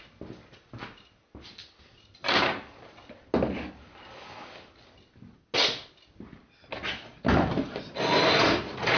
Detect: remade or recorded recorded